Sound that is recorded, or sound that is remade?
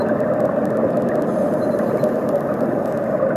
recorded